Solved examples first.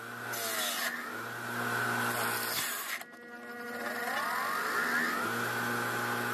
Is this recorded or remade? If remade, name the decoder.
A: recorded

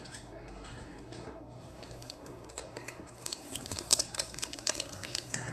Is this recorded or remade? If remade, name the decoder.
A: remade, codec, SNAC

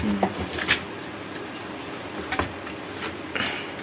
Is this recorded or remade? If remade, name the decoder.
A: recorded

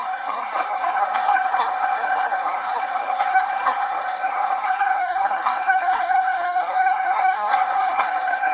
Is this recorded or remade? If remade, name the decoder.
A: remade, codec, SNAC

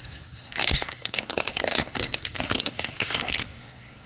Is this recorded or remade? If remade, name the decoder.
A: remade, codec, SNAC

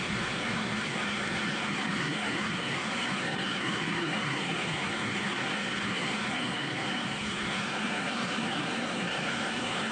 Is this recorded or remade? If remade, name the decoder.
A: remade, codec, SNAC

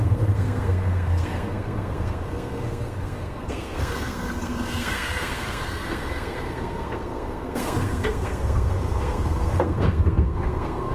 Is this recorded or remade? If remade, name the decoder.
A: remade, codec, SNAC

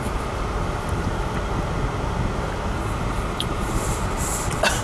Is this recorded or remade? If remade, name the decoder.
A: recorded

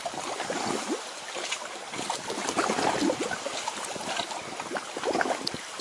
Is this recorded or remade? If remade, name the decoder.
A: recorded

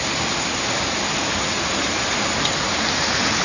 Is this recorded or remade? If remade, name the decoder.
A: recorded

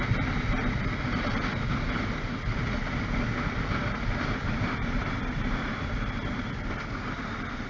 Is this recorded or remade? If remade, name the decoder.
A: recorded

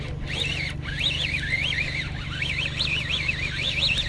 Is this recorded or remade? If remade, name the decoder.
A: recorded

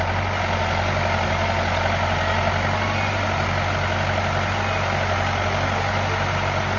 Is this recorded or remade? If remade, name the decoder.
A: recorded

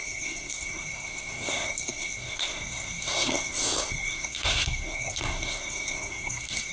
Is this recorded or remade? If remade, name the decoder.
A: remade, codec, SNAC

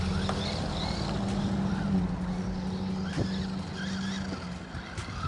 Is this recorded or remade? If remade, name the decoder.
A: recorded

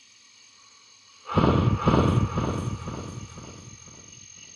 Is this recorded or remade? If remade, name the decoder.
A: recorded